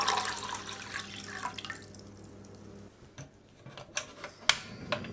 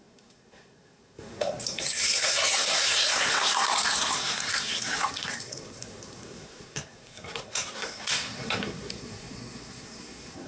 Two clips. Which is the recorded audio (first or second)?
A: first